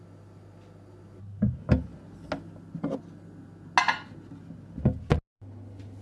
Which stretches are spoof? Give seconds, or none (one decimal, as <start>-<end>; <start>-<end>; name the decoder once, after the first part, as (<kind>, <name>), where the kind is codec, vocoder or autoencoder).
none